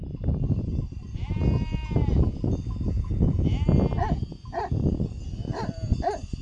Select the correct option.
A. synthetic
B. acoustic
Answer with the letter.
B